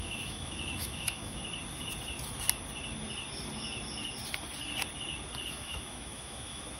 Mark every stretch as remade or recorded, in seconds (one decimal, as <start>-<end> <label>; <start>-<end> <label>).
0.0-1.4 remade; 1.4-5.5 recorded; 5.5-6.8 remade